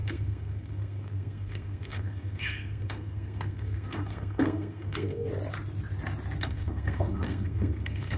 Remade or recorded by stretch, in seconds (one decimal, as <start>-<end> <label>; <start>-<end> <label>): 0.0-5.3 remade; 5.3-6.4 recorded; 6.4-8.2 remade

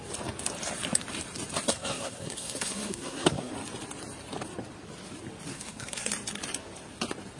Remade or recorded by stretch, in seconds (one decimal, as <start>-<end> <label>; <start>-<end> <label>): 0.0-1.7 recorded; 1.7-3.5 remade; 3.5-5.5 recorded; 5.5-6.1 remade; 6.1-7.4 recorded

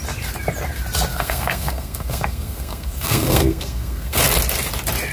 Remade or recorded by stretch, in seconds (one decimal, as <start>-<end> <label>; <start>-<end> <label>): 0.0-1.1 recorded; 1.1-4.2 remade; 4.2-5.1 recorded

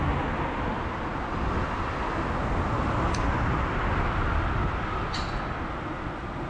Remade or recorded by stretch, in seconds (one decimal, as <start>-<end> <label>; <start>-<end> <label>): 0.0-6.5 recorded

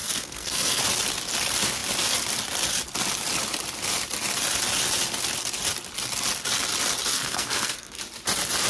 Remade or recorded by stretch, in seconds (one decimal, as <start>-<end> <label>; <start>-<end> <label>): 0.0-0.8 remade; 0.8-7.1 recorded; 7.1-8.0 remade; 8.0-8.7 recorded

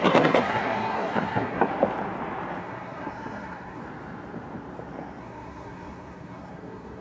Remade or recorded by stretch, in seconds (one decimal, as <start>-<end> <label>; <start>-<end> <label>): 0.0-1.7 remade; 1.7-2.6 recorded; 2.6-3.8 remade; 3.8-5.2 recorded; 5.2-7.0 remade

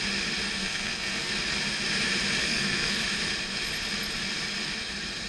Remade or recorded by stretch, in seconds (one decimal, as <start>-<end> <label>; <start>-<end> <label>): 0.0-0.6 recorded; 0.6-1.3 remade; 1.3-2.4 recorded; 2.4-3.0 remade; 3.0-5.3 recorded